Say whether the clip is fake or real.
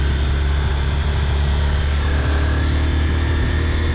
real